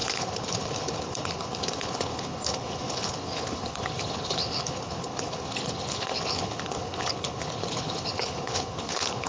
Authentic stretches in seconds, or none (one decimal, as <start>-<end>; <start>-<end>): none